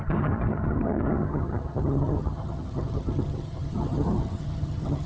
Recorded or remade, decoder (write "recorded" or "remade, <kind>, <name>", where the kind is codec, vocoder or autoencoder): remade, vocoder, HiFi-GAN